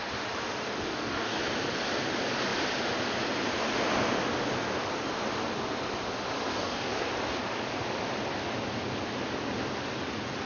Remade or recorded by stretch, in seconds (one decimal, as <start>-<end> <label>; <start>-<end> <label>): 0.0-0.9 recorded; 0.9-1.4 remade; 1.4-6.5 recorded; 6.5-7.1 remade; 7.1-10.5 recorded

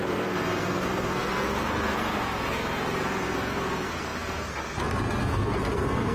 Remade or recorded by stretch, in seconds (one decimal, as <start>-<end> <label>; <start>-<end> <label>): 0.0-6.1 remade